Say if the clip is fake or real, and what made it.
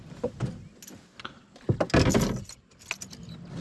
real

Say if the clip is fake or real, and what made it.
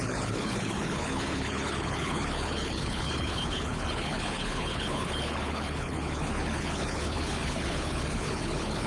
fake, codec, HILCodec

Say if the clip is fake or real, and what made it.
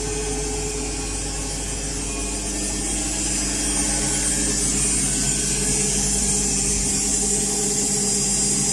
real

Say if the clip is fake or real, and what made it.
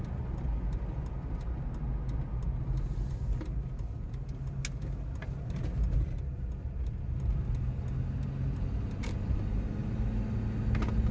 real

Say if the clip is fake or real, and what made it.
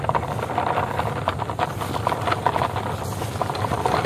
real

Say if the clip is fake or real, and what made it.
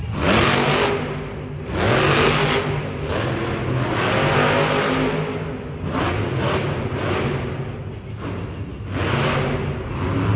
real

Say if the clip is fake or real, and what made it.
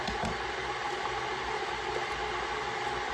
real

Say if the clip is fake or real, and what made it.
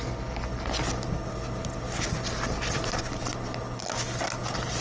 real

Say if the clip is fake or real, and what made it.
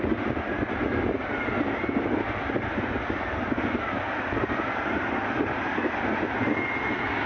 real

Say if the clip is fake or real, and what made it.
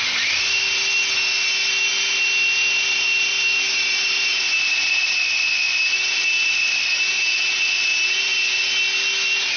real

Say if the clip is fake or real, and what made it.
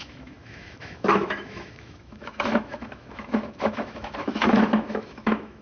fake, autoencoder, DAC-VAE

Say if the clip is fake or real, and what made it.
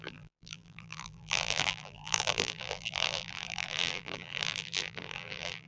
fake, vocoder, BigVGAN v2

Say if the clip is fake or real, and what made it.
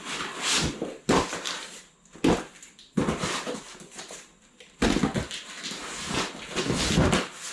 real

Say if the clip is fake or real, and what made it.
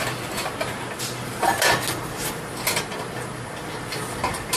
real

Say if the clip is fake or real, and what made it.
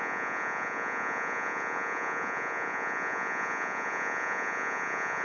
fake, vocoder, Vocos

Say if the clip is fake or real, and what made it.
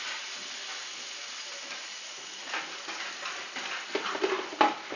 real